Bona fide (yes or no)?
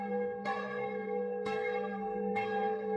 no